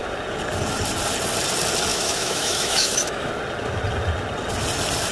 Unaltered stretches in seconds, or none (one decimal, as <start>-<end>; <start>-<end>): 0.0-1.9; 3.3-5.1